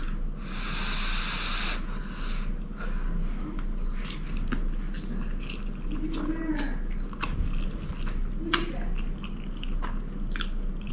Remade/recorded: recorded